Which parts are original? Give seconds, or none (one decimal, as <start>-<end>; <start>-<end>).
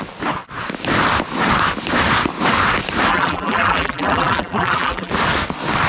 0.0-3.1; 5.1-5.9